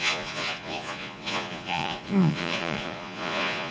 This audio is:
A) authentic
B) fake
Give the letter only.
B